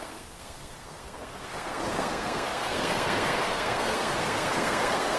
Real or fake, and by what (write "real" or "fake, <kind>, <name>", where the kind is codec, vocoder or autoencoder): fake, codec, SNAC